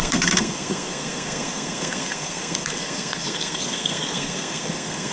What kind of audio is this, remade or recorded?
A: remade